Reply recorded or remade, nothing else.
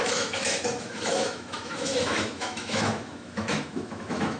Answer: remade